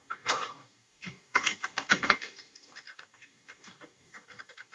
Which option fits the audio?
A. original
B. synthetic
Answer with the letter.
B